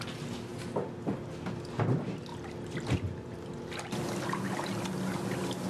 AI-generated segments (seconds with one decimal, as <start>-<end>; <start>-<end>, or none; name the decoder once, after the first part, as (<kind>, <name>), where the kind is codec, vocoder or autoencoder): none